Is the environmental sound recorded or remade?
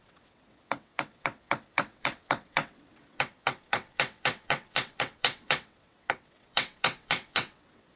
remade